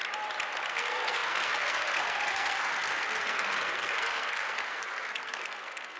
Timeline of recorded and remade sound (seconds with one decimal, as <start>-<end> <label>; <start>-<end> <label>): 0.0-0.7 recorded; 0.7-6.0 remade